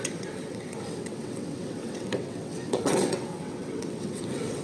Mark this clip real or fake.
fake